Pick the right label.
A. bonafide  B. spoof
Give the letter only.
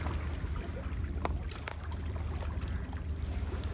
A